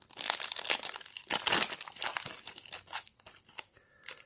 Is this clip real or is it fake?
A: real